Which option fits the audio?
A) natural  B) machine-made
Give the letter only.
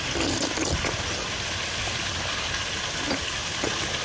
A